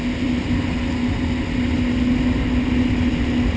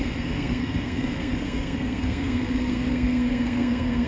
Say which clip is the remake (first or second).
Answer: second